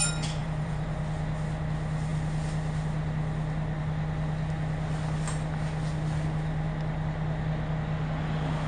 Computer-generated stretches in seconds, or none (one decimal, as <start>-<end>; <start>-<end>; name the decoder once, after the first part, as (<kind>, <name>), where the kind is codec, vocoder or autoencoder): 0.4-1.0 (vocoder, BigVGAN v2)